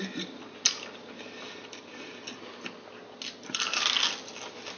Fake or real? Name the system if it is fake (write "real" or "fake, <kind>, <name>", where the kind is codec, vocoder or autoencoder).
real